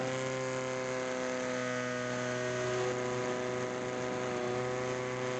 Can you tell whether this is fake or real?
real